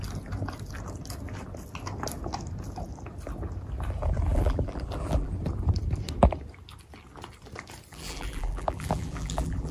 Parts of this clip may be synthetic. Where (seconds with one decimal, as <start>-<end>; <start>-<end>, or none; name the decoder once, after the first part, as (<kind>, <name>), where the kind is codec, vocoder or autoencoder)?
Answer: 4.3-5.3 (vocoder, BigVGAN v2); 7.9-9.7